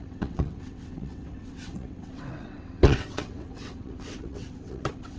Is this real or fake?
fake